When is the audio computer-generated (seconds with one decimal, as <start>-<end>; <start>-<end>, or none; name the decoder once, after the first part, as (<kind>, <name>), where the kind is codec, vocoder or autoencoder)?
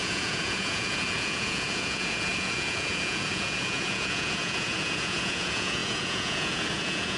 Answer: 0.0-7.2 (vocoder, Vocos)